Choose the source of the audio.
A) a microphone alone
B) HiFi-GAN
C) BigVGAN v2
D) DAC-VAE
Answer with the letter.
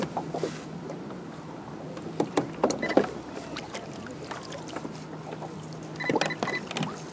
A